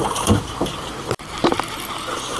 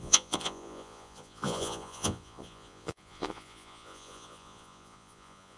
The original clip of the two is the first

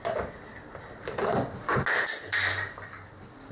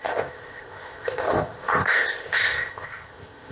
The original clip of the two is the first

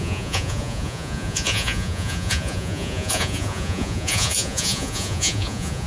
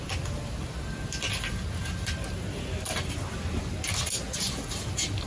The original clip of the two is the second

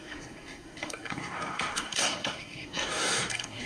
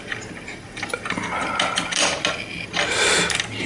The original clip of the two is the second